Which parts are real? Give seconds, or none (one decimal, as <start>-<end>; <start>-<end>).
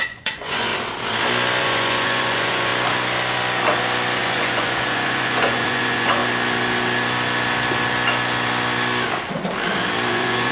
0.7-1.6; 2.7-4.2; 6.2-10.1